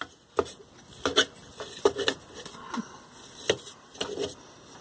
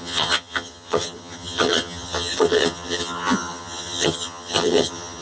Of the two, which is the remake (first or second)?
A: second